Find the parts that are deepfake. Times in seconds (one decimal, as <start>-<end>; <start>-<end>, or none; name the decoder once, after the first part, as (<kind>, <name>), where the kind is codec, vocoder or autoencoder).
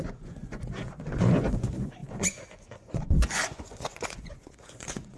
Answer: 0.0-5.2 (vocoder, Vocos)